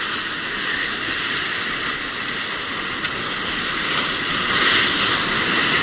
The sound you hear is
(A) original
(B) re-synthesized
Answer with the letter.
A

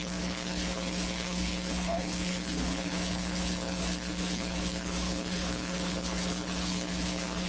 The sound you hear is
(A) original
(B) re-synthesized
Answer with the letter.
B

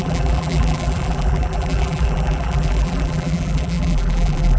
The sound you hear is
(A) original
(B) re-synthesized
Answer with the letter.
B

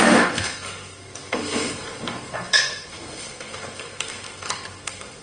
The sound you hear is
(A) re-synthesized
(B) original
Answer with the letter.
A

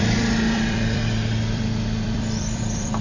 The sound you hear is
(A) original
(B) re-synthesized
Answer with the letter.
B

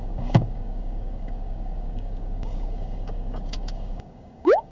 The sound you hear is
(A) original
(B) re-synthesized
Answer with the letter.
B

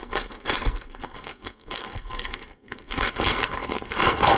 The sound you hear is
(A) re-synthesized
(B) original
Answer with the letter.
A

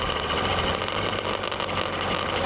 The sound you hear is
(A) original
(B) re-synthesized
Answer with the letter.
A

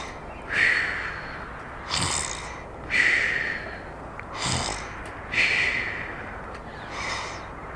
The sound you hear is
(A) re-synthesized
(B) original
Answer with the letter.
B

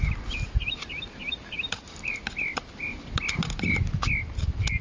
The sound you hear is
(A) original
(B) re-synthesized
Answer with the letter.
A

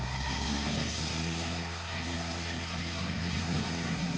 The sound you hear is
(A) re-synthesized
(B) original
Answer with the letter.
A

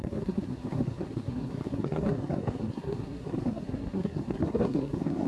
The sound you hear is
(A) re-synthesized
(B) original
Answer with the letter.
A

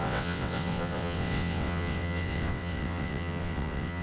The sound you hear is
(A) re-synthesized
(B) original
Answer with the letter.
A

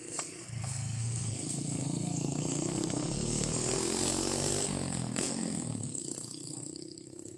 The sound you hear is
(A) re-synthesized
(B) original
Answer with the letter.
A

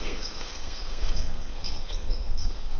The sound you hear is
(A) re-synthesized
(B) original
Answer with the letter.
A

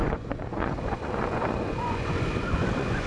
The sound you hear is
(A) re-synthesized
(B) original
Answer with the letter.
A